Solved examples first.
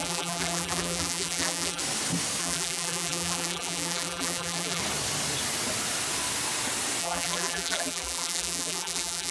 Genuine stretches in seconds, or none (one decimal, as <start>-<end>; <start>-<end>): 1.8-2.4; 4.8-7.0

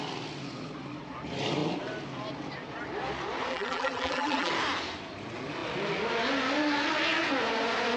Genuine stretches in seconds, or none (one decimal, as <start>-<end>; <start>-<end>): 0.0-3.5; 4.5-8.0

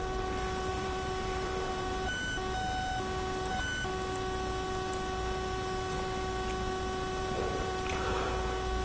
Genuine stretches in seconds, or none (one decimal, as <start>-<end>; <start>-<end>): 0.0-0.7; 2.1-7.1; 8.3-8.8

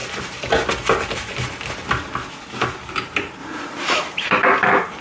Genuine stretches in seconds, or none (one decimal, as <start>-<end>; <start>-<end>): 0.0-3.4; 4.3-5.0

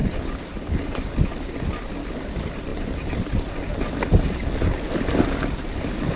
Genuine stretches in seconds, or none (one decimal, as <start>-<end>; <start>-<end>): 1.9-2.7; 3.6-6.2